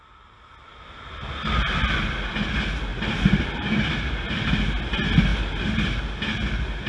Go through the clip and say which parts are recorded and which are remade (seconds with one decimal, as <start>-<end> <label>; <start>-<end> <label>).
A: 0.0-0.7 recorded; 0.7-1.3 remade; 1.3-2.9 recorded; 2.9-4.4 remade; 4.4-5.3 recorded; 5.3-6.0 remade; 6.0-6.9 recorded